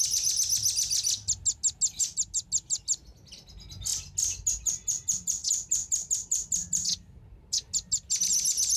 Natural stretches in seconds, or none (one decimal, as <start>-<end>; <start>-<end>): 0.0-8.8